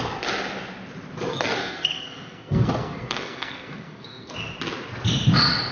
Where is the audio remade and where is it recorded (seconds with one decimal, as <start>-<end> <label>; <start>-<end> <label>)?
0.0-1.3 recorded; 1.3-4.3 remade; 4.3-5.7 recorded